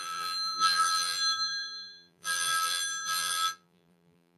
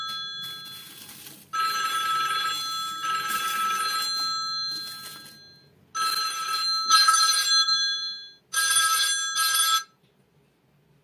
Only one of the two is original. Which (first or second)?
second